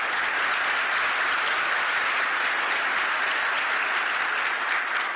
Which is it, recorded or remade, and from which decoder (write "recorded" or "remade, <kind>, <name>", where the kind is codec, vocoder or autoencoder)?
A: recorded